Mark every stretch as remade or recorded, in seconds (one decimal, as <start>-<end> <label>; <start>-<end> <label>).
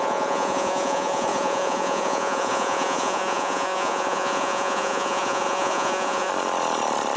0.0-6.3 remade; 6.3-7.2 recorded